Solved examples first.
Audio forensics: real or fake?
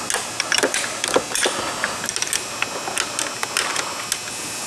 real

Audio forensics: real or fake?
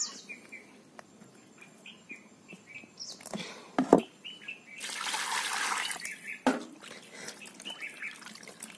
real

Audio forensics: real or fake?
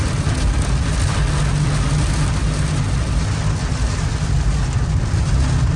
real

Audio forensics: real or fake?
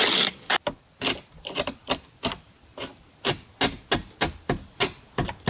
real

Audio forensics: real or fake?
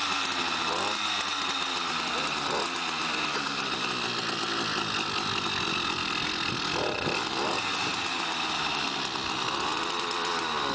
real